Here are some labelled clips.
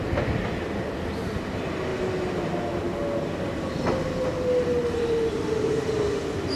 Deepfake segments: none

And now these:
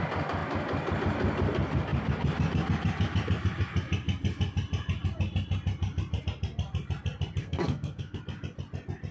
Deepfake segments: 7.4-8.2 (codec, SNAC)

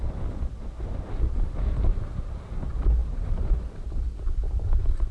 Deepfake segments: none